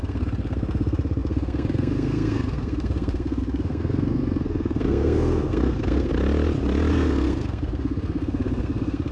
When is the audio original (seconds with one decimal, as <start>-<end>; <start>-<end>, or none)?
6.1-6.9

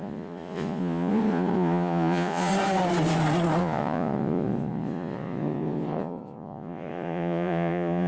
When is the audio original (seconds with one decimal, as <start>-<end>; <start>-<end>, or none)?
2.5-3.6

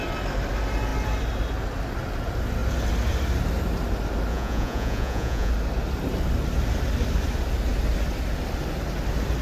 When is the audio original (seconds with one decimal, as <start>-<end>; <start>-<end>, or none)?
0.0-4.3; 5.5-9.4

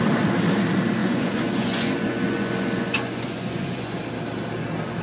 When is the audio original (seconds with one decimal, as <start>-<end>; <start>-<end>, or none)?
0.0-1.0; 4.0-5.0

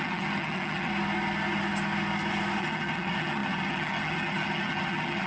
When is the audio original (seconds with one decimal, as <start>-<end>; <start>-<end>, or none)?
0.9-2.6